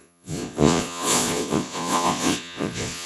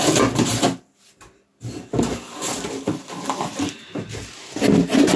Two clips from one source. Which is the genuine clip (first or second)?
second